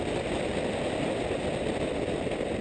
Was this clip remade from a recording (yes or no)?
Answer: no